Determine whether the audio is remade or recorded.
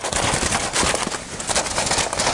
recorded